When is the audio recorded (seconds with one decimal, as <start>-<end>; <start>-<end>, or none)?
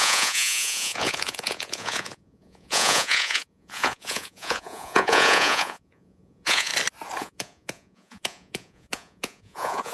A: 6.7-7.2